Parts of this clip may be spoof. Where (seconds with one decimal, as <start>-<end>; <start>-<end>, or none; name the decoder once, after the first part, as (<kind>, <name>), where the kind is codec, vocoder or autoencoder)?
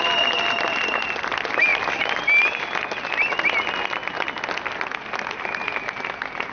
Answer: none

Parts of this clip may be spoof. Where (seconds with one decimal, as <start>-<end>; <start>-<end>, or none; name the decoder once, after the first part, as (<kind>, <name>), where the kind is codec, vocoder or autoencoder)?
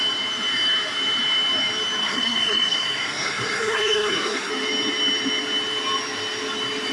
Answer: 2.0-4.5 (codec, SNAC)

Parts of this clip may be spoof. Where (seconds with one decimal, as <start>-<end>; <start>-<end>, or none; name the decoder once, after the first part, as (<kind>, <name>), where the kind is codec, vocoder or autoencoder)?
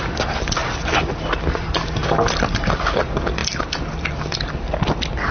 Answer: none